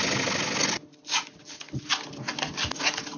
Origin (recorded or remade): recorded